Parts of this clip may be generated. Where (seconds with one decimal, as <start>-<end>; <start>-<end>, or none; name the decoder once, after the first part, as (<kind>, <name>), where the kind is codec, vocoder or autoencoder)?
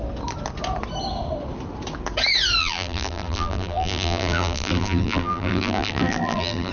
2.6-6.7 (vocoder, BigVGAN v2)